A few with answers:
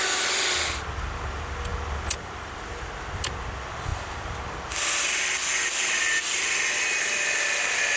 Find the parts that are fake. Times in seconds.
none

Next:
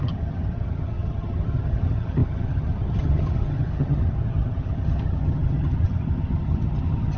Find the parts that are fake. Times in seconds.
0.0-7.2 (vocoder, HiFi-GAN)

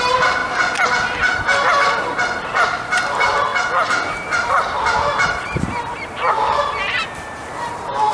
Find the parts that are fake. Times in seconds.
0.0-0.4 (vocoder, BigVGAN v2); 1.4-3.5; 4.1-8.1

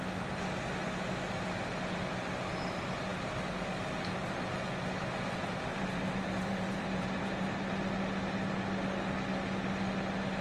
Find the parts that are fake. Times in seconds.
5.7-8.0 (vocoder, BigVGAN v2)

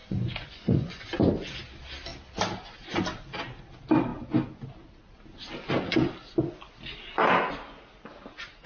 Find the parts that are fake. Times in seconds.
0.0-1.0 (vocoder, Vocos)

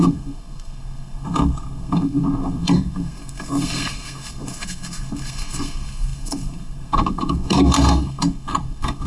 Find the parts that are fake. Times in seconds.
0.0-9.1 (codec, SNAC)

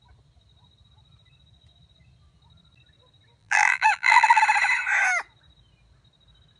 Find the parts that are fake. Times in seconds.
3.4-4.4 (vocoder, BigVGAN v2)